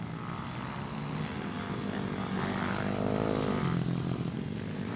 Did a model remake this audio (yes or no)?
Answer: no